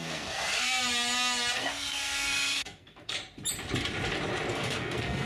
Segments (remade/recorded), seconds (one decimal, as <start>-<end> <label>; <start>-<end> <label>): 0.0-0.8 remade; 0.8-1.6 recorded; 1.6-3.2 remade; 3.2-4.5 recorded; 4.5-5.3 remade